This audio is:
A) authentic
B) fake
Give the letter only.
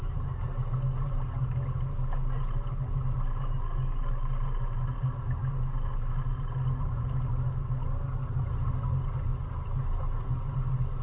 A